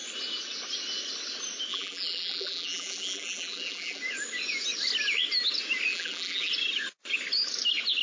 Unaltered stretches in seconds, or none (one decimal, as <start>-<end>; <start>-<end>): 0.0-1.7; 4.0-5.9; 6.5-8.0